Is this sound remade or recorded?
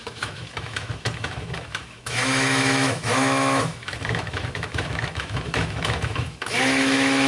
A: remade